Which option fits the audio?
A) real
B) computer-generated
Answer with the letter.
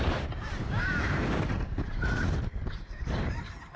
B